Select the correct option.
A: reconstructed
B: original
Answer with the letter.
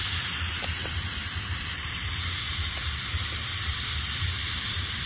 A